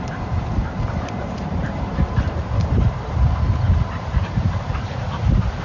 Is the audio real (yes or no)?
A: no